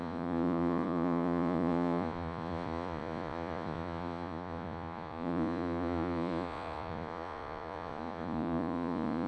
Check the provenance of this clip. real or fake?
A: fake